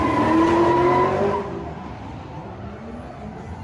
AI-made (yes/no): no